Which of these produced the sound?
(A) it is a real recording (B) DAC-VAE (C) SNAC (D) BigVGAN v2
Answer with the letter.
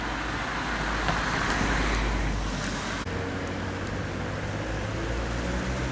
A